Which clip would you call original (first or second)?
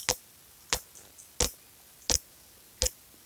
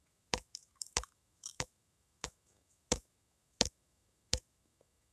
first